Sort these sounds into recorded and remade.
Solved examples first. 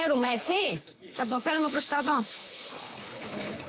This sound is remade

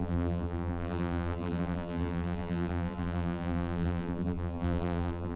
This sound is remade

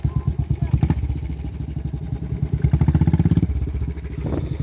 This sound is recorded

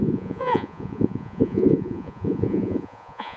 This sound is remade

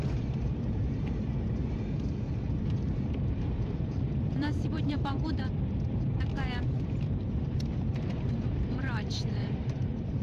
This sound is remade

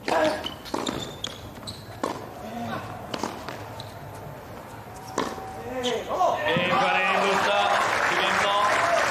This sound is recorded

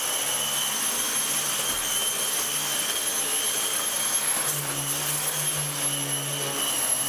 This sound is recorded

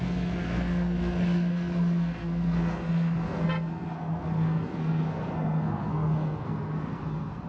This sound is remade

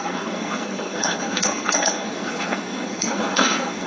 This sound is remade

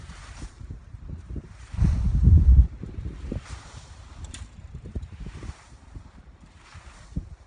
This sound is remade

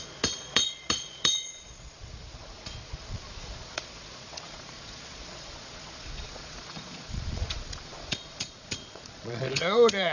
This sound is remade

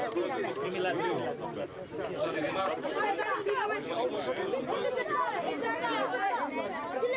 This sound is recorded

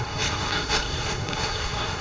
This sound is remade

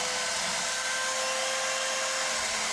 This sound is recorded